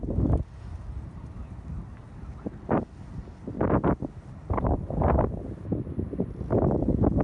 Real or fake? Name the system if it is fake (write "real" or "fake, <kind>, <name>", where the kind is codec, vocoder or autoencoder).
real